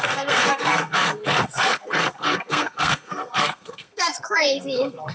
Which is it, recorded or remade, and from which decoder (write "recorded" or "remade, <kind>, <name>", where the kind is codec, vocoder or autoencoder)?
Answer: remade, codec, SNAC